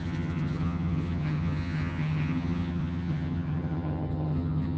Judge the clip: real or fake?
fake